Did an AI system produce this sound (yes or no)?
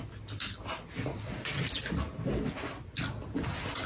no